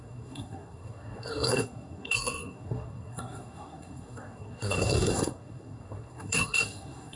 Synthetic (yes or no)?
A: yes